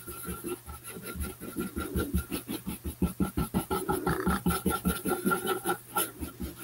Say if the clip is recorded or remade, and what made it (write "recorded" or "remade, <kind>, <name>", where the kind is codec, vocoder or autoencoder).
recorded